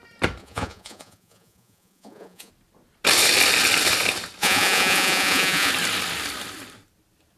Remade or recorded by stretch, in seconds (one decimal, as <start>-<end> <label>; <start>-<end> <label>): 0.0-0.4 recorded; 0.4-2.5 remade; 2.5-4.4 recorded; 4.4-5.7 remade; 5.7-7.4 recorded